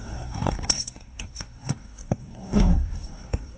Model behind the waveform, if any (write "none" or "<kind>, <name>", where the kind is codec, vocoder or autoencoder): codec, SNAC